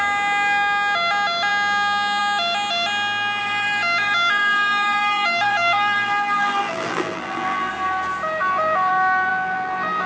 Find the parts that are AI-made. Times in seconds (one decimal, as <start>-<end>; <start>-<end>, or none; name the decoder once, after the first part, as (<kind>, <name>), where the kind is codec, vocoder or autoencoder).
3.4-7.7 (vocoder, BigVGAN v2); 8.4-8.9; 9.3-10.1